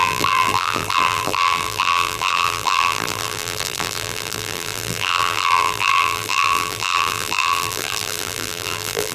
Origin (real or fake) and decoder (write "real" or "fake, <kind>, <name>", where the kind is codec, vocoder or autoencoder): fake, vocoder, BigVGAN v2